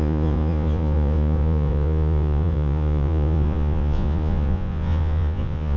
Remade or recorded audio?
remade